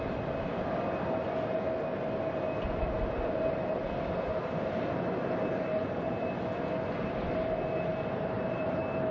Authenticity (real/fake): real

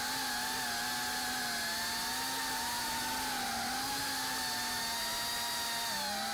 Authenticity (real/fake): real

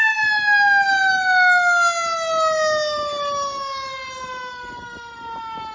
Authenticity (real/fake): real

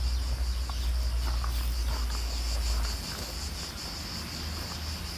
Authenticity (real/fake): real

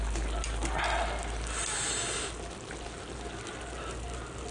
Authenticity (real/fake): real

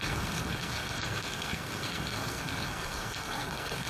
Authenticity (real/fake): fake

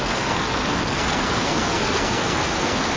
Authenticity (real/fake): fake